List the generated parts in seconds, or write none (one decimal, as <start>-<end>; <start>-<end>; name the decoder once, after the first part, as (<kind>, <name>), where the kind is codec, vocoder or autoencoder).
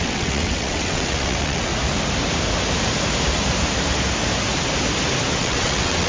0.0-1.7 (vocoder, WaveNeXt); 5.4-6.1